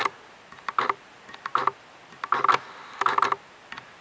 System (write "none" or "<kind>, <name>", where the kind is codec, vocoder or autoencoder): none